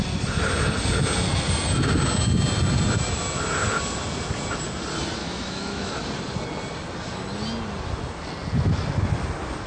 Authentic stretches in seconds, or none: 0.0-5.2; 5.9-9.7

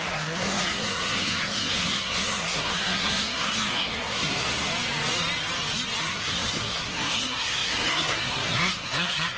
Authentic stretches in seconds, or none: 4.7-6.0

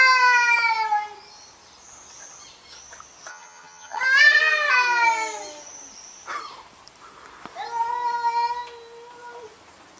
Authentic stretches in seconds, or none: 0.0-3.3; 4.0-10.0

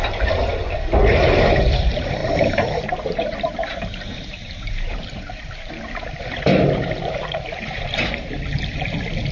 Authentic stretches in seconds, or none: none

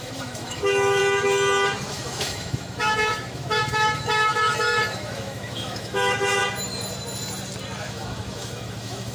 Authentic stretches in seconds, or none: 1.0-1.9; 6.4-7.9